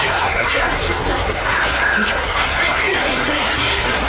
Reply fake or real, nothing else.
fake